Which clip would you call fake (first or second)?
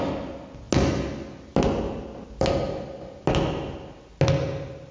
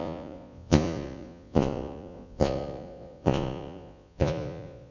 second